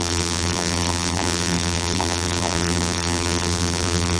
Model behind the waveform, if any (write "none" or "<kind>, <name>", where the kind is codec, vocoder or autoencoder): vocoder, BigVGAN v2